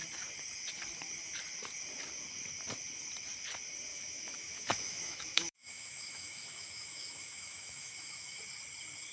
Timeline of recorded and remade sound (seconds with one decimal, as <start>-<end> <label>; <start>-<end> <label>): 0.0-3.9 recorded; 3.9-8.4 remade; 8.4-9.1 recorded